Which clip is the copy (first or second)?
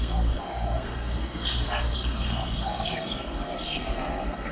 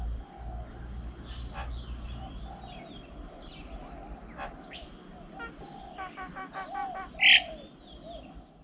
first